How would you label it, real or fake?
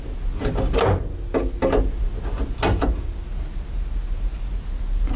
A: real